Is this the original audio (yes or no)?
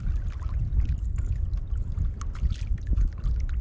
yes